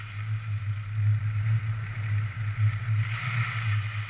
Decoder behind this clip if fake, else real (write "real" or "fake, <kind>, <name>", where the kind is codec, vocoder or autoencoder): real